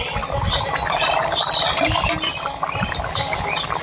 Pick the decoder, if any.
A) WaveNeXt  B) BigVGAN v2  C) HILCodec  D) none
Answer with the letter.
D